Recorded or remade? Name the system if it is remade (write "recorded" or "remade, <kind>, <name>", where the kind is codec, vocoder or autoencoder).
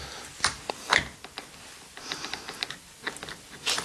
recorded